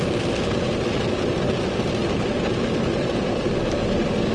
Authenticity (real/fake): real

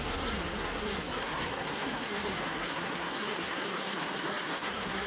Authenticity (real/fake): fake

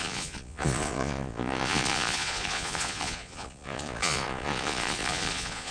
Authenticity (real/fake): fake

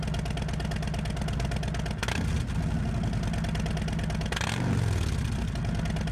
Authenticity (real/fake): real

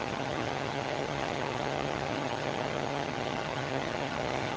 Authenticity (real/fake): fake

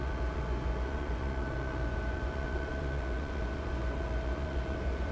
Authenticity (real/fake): fake